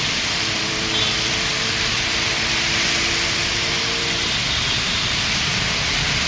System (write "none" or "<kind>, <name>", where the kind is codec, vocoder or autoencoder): vocoder, BigVGAN v2